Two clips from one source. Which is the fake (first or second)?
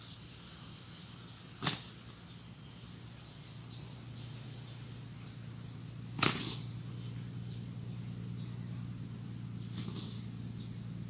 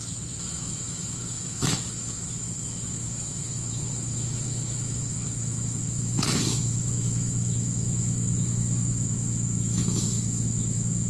second